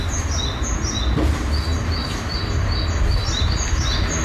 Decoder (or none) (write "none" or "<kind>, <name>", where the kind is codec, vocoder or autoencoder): none